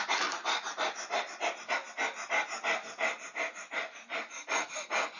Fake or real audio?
real